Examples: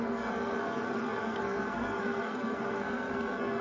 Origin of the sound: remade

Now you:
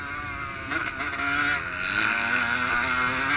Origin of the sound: recorded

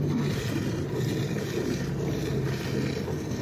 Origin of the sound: recorded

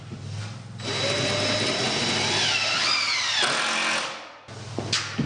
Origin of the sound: recorded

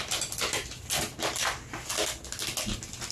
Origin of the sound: recorded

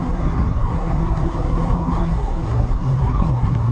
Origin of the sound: remade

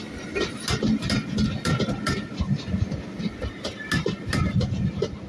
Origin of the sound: recorded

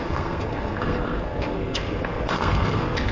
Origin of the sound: remade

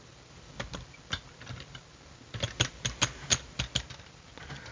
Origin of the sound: recorded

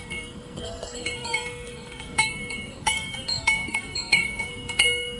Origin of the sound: remade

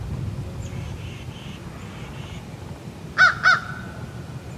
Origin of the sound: recorded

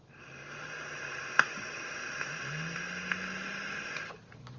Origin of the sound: recorded